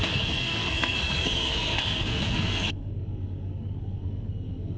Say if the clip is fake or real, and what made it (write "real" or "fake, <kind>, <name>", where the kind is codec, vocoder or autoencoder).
fake, codec, SNAC